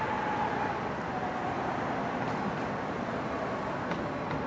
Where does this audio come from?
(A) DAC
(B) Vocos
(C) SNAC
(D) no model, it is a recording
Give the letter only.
D